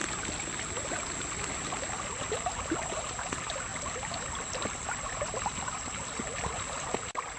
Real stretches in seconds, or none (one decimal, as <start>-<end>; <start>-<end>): 0.0-7.4